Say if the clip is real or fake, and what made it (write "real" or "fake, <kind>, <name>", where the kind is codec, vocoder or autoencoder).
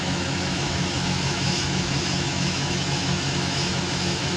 fake, autoencoder, DAC-VAE